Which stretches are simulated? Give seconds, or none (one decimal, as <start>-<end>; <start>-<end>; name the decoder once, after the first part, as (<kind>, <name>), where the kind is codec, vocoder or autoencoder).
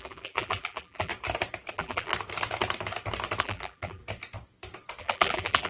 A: 0.0-1.1 (vocoder, BigVGAN v2); 1.7-2.1; 3.4-4.0; 5.0-5.7